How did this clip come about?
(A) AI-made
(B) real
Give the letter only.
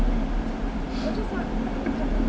B